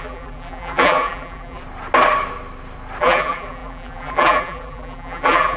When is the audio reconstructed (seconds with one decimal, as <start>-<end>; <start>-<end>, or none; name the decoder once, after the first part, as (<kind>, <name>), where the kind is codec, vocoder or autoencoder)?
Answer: 0.0-1.6 (vocoder, BigVGAN v2); 3.0-5.6